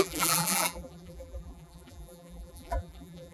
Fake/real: fake